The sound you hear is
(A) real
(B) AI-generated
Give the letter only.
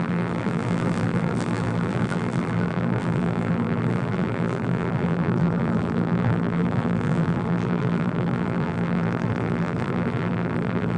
B